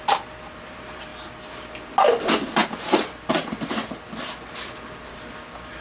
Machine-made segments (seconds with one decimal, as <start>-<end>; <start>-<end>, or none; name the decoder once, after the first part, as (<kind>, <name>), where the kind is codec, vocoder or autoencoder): none